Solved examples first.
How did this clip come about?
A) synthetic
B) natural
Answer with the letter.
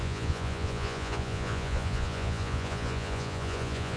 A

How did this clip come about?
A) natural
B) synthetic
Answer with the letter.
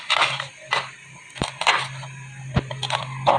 A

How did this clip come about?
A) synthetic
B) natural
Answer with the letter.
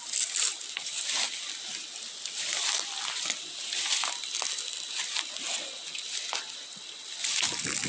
B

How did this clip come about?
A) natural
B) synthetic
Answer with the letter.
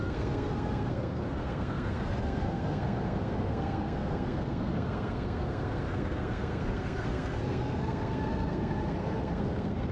B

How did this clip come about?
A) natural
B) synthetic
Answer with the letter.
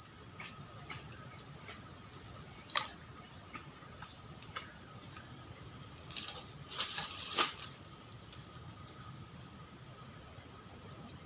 A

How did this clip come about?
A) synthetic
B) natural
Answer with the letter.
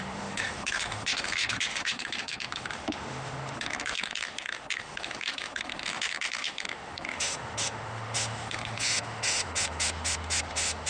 A